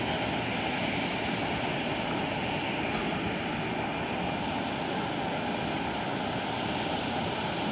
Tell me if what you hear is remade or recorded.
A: recorded